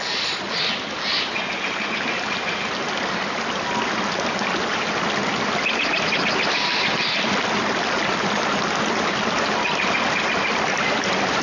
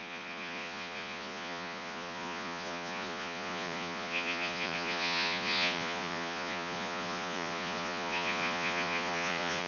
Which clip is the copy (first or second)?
second